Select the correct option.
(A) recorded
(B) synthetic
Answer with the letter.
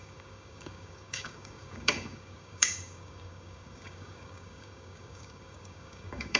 B